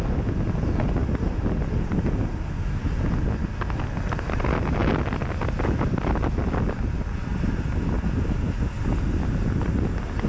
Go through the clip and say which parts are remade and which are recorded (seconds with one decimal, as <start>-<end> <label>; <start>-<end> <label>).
0.0-10.3 recorded